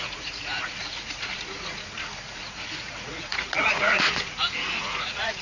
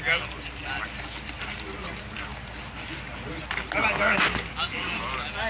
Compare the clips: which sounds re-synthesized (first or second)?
first